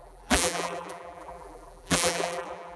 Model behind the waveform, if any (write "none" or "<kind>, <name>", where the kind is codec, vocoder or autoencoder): vocoder, BigVGAN v2